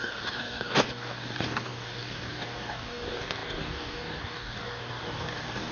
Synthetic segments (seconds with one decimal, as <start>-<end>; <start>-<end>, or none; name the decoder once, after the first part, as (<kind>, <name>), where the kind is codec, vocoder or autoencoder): 0.0-5.7 (codec, DAC)